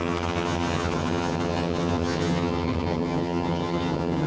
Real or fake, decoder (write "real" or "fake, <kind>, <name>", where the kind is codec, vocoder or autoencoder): fake, vocoder, HiFi-GAN